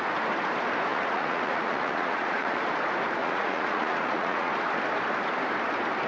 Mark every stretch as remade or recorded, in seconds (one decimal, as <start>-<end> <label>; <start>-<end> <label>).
0.0-0.9 recorded; 0.9-2.6 remade; 2.6-3.2 recorded; 3.2-4.5 remade; 4.5-6.1 recorded